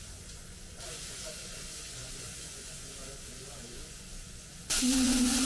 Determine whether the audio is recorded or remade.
remade